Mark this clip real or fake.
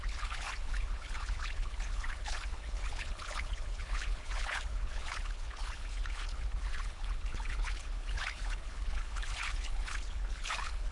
fake